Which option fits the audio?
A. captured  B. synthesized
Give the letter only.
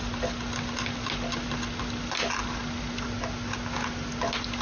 A